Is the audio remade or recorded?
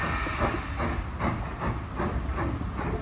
recorded